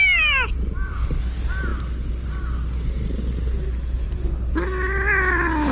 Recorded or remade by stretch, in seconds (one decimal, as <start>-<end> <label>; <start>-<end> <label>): 0.0-5.7 recorded